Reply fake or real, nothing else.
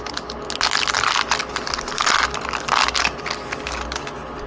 real